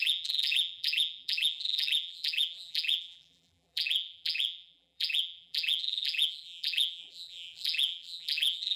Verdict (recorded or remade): remade